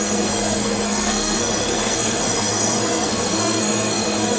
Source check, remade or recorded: remade